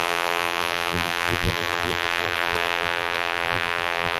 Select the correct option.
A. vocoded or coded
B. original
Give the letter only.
A